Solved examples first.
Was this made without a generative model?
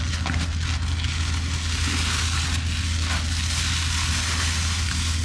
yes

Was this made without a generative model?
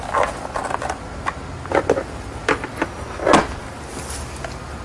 yes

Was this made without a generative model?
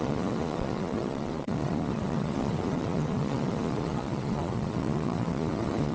no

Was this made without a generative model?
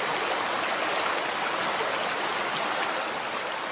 yes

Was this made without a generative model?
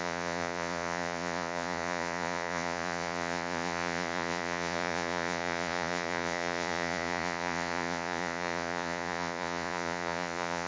no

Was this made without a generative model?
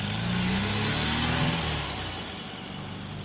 yes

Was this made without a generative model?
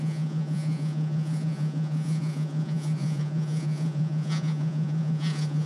no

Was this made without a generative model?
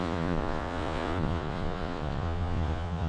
no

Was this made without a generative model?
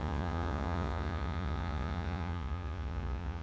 no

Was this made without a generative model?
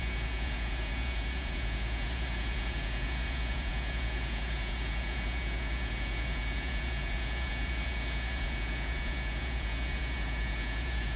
no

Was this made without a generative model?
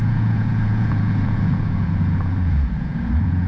no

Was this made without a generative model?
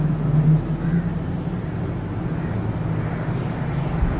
yes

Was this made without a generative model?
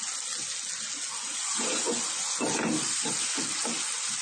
yes